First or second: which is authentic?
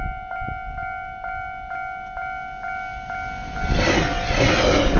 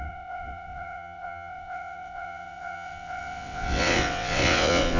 first